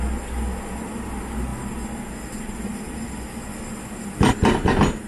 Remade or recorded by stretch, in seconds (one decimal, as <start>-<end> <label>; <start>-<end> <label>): 0.0-5.1 recorded